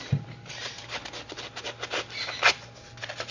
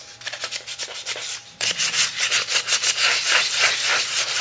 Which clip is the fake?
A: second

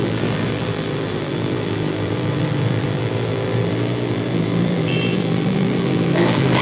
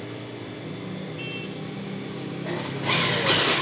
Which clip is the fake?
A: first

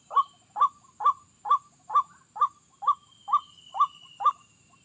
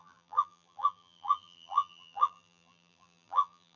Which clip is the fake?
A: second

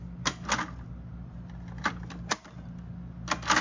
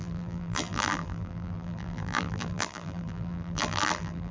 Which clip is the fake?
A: second